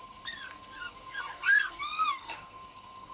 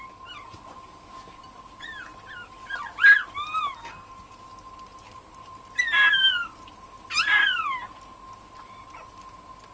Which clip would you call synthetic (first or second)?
first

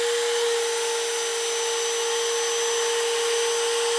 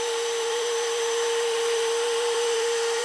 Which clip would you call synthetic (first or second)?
second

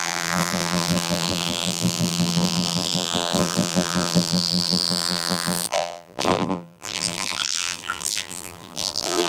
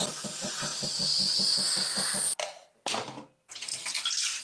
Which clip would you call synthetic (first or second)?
first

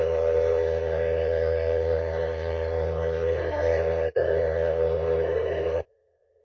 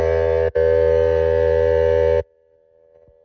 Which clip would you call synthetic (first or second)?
first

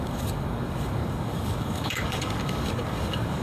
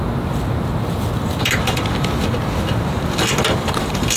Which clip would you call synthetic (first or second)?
first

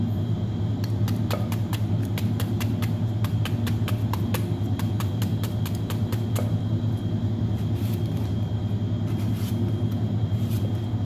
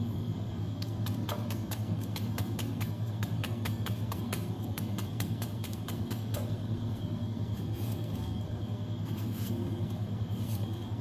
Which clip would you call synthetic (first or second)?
second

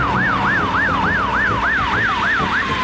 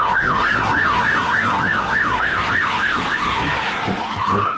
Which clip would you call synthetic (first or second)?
second